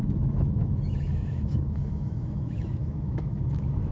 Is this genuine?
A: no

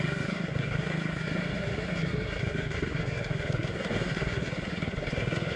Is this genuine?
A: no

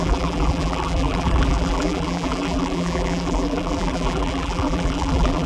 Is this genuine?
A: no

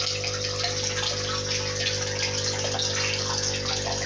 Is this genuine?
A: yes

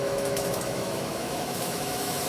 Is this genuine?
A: no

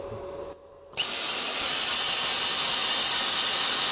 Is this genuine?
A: yes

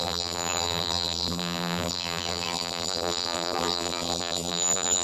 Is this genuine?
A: no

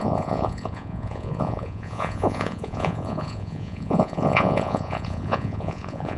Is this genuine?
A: no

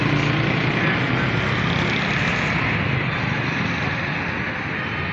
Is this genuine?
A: yes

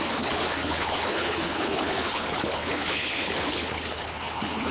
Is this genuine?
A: no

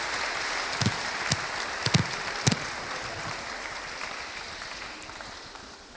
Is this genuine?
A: yes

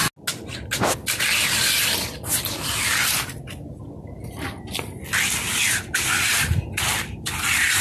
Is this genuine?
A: yes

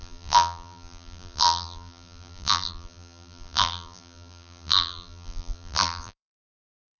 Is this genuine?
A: no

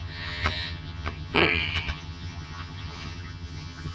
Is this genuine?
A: no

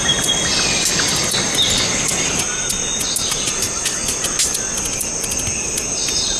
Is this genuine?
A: yes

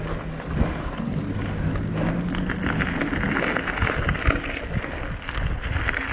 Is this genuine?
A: yes